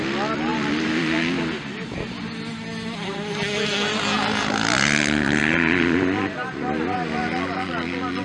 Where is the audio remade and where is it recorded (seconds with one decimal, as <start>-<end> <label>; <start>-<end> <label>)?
0.0-8.2 recorded